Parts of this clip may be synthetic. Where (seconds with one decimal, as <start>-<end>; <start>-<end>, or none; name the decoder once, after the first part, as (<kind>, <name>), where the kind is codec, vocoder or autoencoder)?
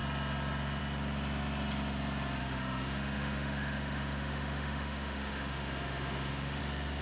2.4-6.6 (autoencoder, DAC-VAE)